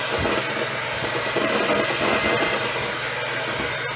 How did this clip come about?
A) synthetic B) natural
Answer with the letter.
B